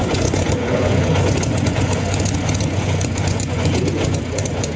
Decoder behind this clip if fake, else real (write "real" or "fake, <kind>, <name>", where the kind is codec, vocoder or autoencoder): fake, vocoder, Vocos